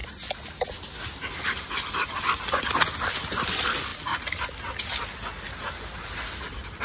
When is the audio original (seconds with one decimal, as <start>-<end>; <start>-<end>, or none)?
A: 0.0-6.8